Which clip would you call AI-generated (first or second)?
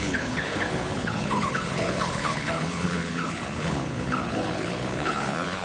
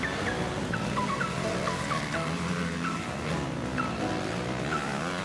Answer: first